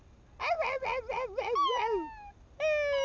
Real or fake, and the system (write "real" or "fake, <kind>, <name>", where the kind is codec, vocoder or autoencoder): real